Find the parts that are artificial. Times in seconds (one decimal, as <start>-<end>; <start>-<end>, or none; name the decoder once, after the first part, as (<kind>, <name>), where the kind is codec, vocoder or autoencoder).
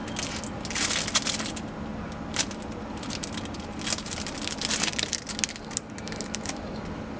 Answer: none